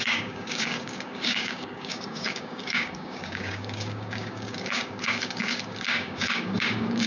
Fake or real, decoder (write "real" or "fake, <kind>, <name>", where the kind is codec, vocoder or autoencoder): fake, codec, DAC